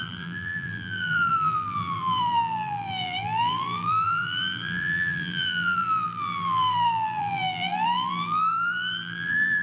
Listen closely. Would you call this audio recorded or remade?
remade